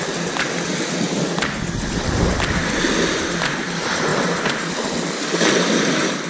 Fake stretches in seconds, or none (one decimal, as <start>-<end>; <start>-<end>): 4.1-4.7